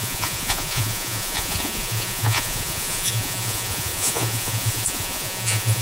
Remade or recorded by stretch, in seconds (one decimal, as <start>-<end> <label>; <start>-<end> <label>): 0.0-5.8 remade